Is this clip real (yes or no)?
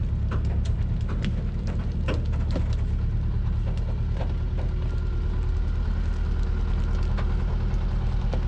yes